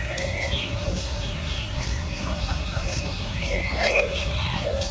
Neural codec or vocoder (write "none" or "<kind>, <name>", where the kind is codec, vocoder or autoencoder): codec, SNAC